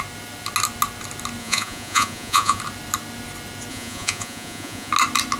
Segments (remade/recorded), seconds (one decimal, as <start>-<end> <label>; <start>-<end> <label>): 0.0-1.4 recorded; 1.4-2.6 remade; 2.6-3.7 recorded; 3.7-4.9 remade; 4.9-5.4 recorded